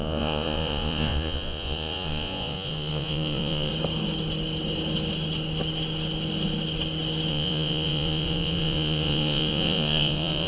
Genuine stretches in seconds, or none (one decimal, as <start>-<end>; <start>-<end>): 3.7-7.3